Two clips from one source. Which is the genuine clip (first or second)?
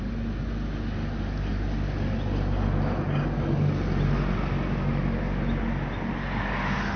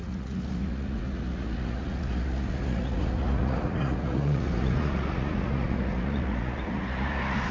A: first